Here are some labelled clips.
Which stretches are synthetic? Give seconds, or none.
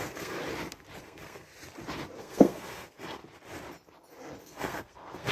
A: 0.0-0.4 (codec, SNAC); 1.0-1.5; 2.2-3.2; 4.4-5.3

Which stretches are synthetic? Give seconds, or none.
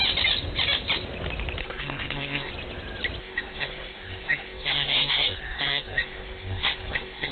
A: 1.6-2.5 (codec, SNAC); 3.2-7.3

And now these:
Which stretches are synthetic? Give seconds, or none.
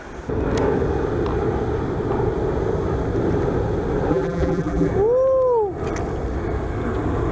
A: 4.1-4.9 (vocoder, BigVGAN v2)